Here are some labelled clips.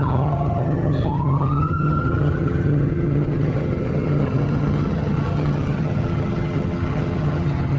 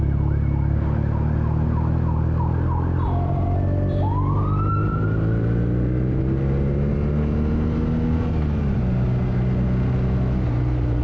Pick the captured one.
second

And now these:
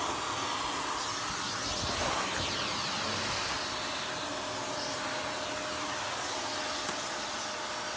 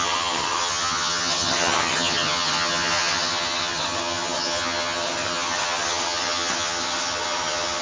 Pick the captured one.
first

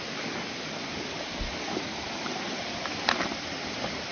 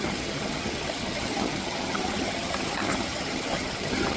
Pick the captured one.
first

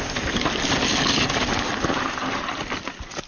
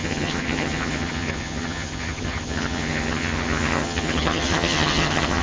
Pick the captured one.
first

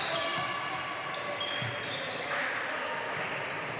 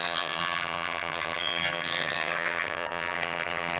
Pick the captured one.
first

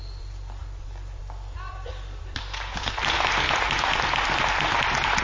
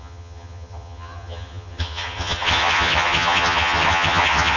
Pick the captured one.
first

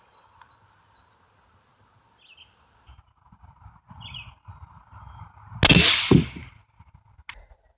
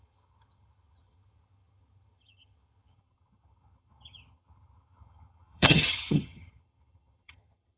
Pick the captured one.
first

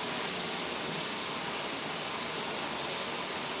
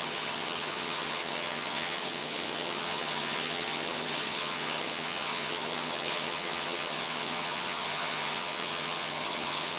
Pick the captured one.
first